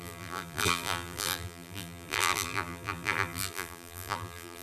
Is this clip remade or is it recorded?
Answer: remade